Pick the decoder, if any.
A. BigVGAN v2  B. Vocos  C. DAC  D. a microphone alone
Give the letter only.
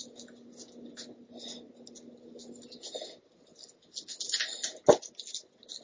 D